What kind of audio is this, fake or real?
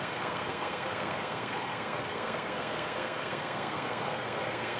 fake